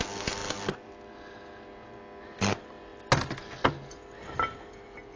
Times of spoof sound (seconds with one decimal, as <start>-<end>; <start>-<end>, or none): none